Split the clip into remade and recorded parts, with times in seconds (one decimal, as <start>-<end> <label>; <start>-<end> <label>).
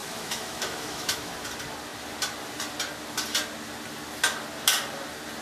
0.0-1.3 remade; 1.3-5.4 recorded